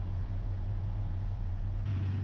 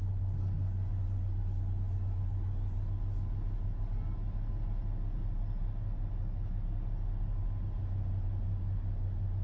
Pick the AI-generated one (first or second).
first